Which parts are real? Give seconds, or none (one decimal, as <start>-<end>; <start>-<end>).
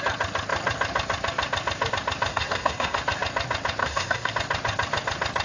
0.0-2.3; 3.0-3.8; 4.3-5.4